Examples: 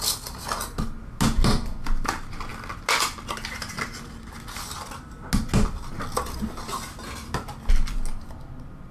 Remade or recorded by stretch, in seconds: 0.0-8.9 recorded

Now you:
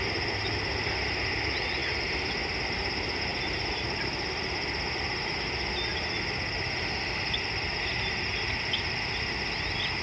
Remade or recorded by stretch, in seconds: 0.0-10.0 recorded

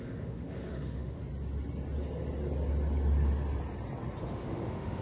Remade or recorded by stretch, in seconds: 0.0-1.2 remade; 1.2-4.2 recorded; 4.2-5.0 remade

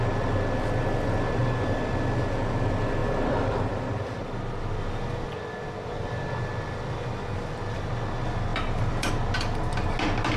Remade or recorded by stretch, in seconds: 0.0-1.4 recorded; 1.4-1.9 remade; 1.9-3.0 recorded; 3.0-4.2 remade; 4.2-8.5 recorded; 8.5-9.1 remade; 9.1-10.4 recorded

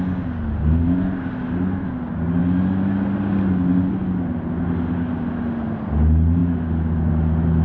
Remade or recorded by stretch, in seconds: 0.0-7.6 recorded

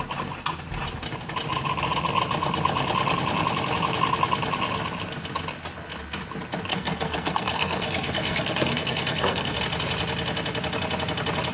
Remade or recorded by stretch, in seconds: 0.0-6.7 recorded; 6.7-9.6 remade; 9.6-11.5 recorded